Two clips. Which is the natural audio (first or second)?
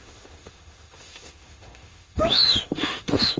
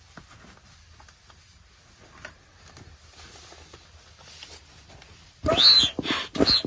second